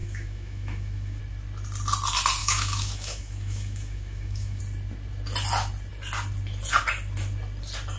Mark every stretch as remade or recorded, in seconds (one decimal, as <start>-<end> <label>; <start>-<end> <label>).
0.0-1.2 remade; 1.2-2.4 recorded; 2.4-4.6 remade; 4.6-8.0 recorded